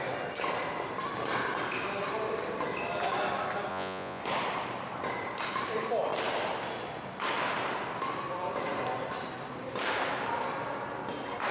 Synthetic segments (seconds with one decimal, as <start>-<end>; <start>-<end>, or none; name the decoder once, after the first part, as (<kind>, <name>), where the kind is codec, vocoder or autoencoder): 3.7-4.2 (vocoder, Vocos)